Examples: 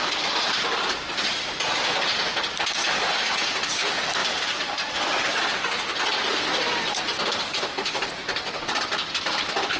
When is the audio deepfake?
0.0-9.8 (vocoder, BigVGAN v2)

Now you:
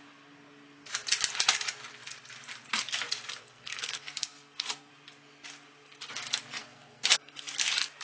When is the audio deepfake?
3.4-4.9 (codec, SNAC); 6.6-7.5

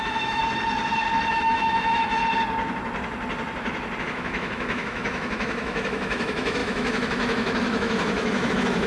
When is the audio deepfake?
0.0-0.4 (autoencoder, DAC-VAE); 1.3-2.2; 4.0-8.9

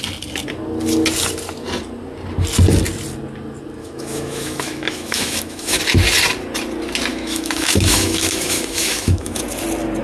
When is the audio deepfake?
3.8-5.8 (autoencoder, DAC-VAE); 7.1-9.4

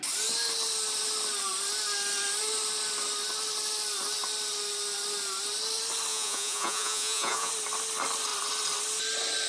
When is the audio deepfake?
6.1-7.5 (vocoder, Vocos)

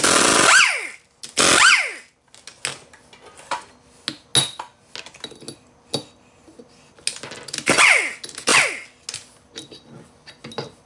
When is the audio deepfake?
none

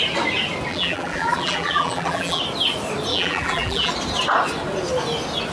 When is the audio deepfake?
0.7-2.4 (vocoder, BigVGAN v2); 3.1-3.9

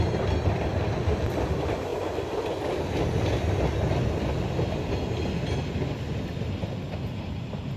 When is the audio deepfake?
none